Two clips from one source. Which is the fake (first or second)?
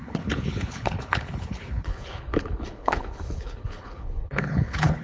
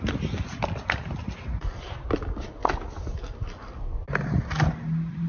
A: first